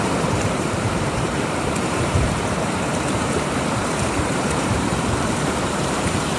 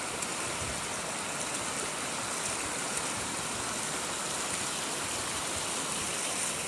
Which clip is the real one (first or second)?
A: second